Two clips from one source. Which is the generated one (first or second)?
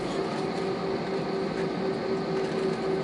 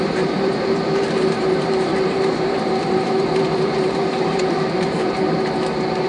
second